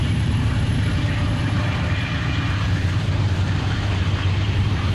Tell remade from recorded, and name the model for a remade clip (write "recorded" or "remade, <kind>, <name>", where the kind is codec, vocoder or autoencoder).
remade, vocoder, BigVGAN v2